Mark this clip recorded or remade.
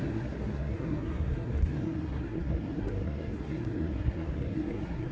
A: remade